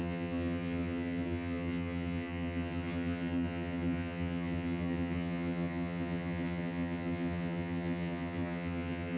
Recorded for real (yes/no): no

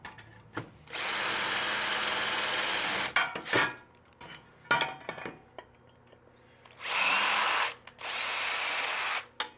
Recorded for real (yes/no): yes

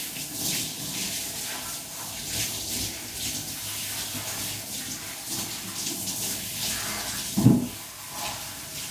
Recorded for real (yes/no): yes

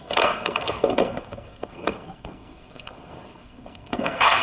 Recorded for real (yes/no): no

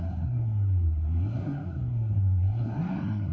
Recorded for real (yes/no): no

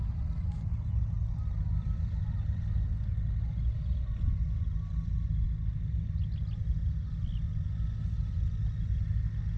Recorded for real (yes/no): yes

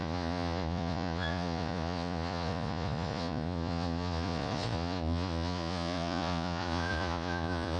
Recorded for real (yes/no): no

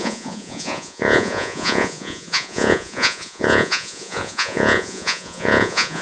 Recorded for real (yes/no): no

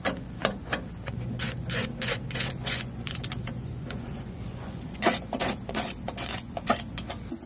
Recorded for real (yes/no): no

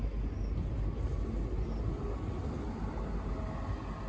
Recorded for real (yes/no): yes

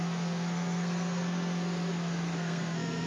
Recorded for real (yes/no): no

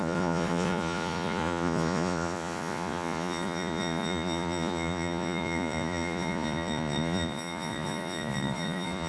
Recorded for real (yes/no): no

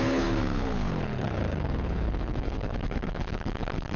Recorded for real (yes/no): no